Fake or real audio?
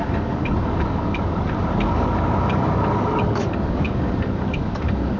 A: fake